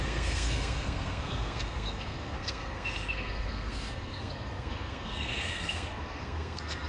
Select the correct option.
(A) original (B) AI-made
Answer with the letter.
B